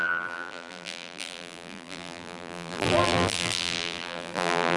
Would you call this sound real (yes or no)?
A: no